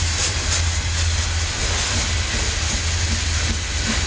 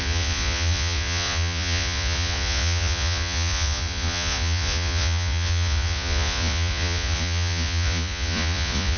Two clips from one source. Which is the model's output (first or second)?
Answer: second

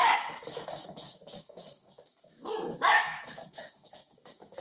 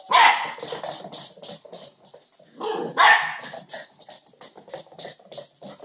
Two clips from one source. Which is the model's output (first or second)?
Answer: first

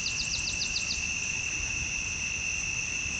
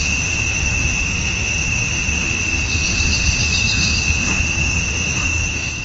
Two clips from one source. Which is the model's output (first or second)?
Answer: second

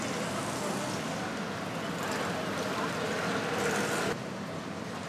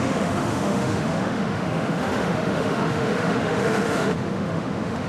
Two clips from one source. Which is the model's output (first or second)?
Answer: second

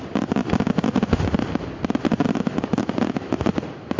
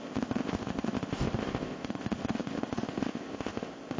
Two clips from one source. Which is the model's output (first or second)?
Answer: second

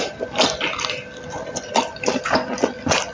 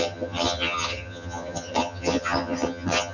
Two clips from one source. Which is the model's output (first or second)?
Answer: second